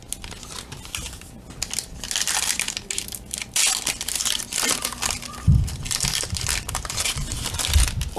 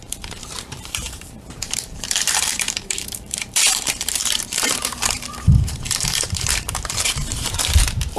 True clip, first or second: first